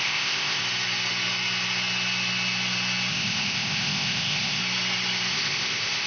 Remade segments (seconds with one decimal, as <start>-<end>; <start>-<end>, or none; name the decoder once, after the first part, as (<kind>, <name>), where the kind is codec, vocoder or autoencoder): 0.0-0.6 (codec, ZipCodec); 3.1-4.6; 5.3-6.1